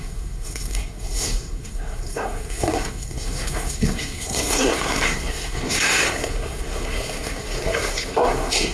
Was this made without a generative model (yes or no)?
no